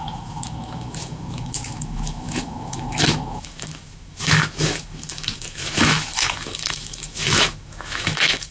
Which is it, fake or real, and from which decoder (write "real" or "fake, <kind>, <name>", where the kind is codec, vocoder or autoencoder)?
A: fake, autoencoder, DAC-VAE